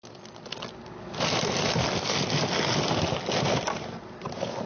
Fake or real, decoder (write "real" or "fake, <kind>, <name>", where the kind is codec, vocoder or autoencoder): real